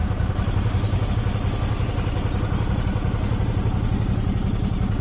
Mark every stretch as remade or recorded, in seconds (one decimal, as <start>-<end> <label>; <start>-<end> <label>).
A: 0.0-1.1 remade; 1.1-5.0 recorded